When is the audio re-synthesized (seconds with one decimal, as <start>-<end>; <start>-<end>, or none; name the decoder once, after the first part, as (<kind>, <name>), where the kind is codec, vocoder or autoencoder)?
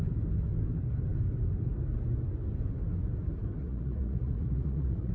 3.6-5.1 (vocoder, Vocos)